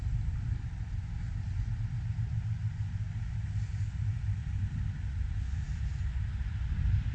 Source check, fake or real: fake